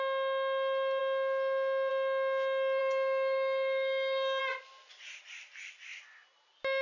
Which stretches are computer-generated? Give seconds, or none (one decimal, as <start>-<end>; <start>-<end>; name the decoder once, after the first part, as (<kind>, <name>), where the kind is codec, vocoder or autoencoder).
2.8-4.4 (codec, DAC)